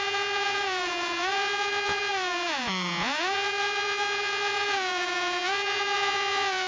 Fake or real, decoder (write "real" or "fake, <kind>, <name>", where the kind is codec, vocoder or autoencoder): fake, vocoder, Vocos